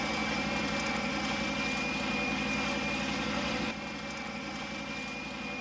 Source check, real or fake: real